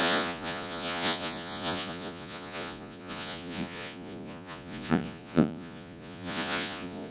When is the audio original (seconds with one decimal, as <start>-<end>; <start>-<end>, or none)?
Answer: none